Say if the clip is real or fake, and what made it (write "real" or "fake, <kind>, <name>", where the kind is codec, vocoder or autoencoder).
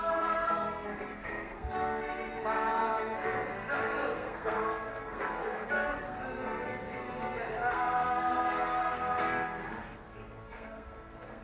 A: fake, codec, SNAC